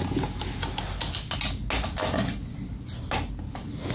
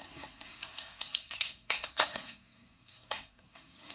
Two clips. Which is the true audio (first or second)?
first